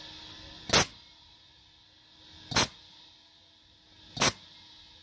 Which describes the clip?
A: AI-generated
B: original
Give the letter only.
B